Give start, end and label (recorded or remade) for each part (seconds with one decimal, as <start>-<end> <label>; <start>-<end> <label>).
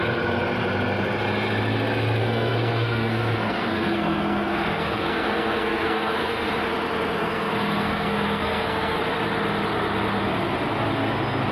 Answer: 0.0-2.2 recorded; 2.2-6.5 remade; 6.5-7.2 recorded; 7.2-9.0 remade; 9.0-11.5 recorded